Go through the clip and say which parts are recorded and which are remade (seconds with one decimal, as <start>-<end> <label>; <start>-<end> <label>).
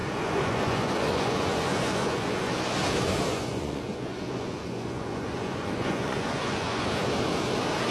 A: 0.0-2.5 remade; 2.5-3.3 recorded; 3.3-6.9 remade; 6.9-7.9 recorded